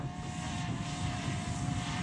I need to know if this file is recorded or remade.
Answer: recorded